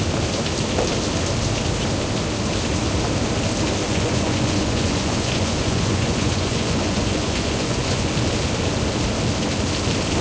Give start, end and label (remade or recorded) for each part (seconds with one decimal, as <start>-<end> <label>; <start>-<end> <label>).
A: 0.0-3.8 recorded; 3.8-8.1 remade; 8.1-10.2 recorded